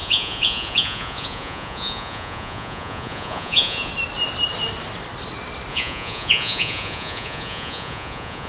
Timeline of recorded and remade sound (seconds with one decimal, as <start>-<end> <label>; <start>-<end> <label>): 0.0-3.9 remade; 3.9-5.7 recorded; 5.7-8.5 remade